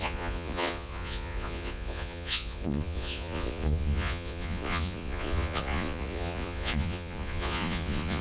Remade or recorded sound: remade